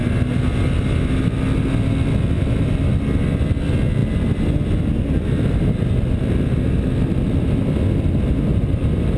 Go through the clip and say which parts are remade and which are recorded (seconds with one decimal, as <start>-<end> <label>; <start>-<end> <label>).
0.0-8.5 recorded; 8.5-9.2 remade